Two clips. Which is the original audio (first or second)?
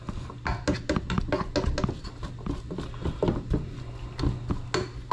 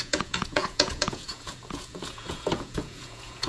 first